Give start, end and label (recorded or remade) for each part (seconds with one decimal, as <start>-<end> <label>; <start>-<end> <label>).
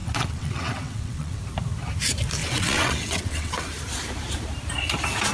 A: 0.0-1.4 remade; 1.4-2.4 recorded; 2.4-3.7 remade; 3.7-5.3 recorded